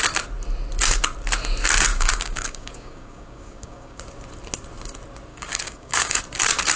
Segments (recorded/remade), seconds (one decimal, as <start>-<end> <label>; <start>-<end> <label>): 0.0-1.9 recorded; 1.9-4.0 remade; 4.0-5.3 recorded; 5.3-6.2 remade; 6.2-6.8 recorded